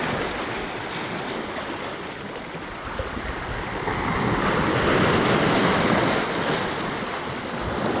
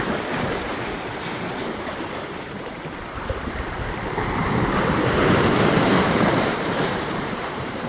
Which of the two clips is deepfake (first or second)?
second